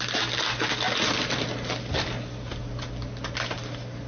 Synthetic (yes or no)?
no